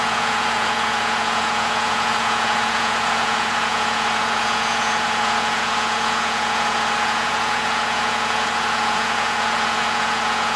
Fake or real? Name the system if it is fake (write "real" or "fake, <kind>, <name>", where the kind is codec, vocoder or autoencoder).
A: fake, vocoder, Vocos